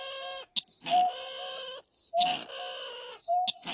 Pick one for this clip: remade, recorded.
recorded